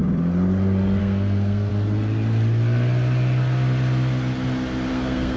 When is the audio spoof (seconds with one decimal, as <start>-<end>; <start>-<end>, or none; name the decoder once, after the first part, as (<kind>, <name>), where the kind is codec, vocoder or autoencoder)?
1.0-1.7 (codec, SNAC); 4.9-5.4

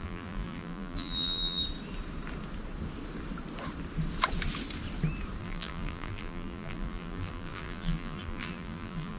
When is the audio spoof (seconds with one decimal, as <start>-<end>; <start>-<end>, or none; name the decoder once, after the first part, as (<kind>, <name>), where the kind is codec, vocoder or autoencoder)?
0.0-1.6 (vocoder, BigVGAN v2); 5.4-9.2